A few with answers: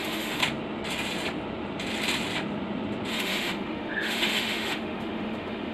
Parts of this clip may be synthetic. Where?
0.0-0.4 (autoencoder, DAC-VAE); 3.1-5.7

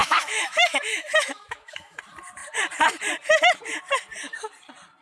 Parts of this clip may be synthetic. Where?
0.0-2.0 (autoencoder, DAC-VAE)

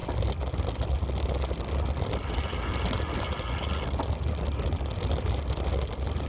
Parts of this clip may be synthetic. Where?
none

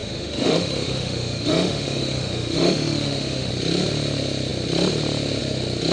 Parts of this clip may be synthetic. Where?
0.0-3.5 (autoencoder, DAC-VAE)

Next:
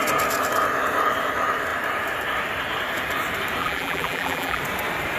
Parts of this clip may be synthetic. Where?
3.6-4.6 (vocoder, BigVGAN v2)

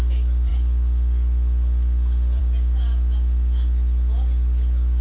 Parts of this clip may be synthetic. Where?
none